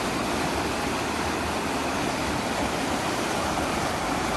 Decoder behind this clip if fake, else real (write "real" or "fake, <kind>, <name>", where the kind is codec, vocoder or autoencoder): real